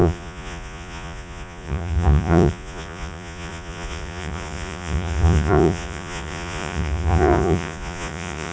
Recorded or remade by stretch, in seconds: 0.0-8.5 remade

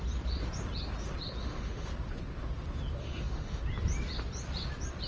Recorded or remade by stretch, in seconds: 0.0-1.4 recorded; 1.4-1.9 remade; 1.9-3.0 recorded; 3.0-3.6 remade; 3.6-5.1 recorded

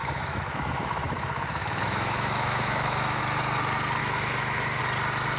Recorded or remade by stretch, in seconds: 0.0-3.2 remade; 3.2-4.0 recorded; 4.0-4.8 remade; 4.8-5.4 recorded